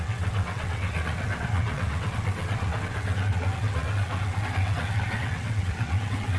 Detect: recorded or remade remade